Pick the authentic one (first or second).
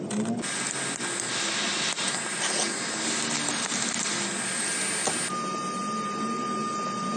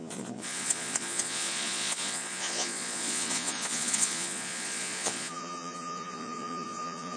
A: first